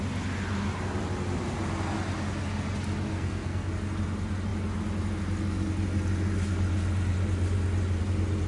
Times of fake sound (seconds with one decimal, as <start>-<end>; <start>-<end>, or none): 3.1-3.7